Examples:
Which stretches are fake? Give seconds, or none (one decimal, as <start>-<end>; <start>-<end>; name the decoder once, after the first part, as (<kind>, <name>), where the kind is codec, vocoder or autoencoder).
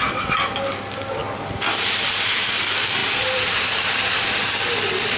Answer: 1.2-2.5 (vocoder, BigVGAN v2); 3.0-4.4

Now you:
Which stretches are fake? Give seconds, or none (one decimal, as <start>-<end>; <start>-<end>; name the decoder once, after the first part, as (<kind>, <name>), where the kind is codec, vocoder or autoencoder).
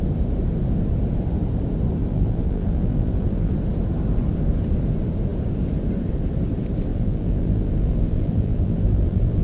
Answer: 2.0-3.5 (vocoder, BigVGAN v2); 6.9-9.4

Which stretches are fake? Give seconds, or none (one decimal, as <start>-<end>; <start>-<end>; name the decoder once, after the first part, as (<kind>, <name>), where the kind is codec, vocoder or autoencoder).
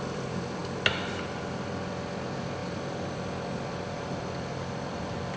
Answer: 0.0-0.6 (vocoder, BigVGAN v2); 1.3-5.4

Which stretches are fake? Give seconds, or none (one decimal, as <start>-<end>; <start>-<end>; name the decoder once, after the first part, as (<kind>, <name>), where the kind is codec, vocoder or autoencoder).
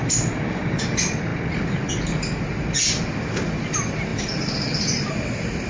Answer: 4.1-5.1 (vocoder, BigVGAN v2)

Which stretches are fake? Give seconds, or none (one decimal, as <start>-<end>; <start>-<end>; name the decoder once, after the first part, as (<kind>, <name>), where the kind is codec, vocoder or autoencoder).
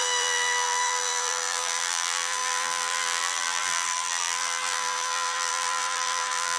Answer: 0.0-6.6 (vocoder, BigVGAN v2)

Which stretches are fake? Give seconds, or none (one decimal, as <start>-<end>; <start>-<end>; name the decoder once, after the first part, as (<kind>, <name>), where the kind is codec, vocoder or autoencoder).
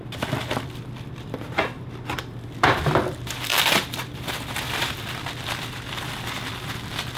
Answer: 0.0-7.2 (vocoder, BigVGAN v2)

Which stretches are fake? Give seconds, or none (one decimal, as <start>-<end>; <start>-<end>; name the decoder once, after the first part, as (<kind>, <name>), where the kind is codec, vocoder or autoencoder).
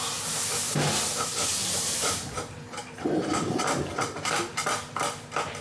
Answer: 1.6-4.6 (vocoder, BigVGAN v2)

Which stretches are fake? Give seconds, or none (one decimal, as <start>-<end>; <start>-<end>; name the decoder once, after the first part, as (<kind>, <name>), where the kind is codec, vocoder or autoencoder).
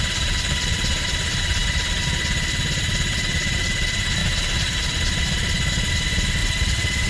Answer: 6.4-7.1 (vocoder, BigVGAN v2)